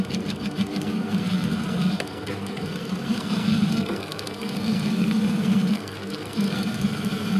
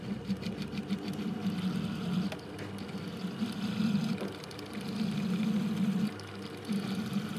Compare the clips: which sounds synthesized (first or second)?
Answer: first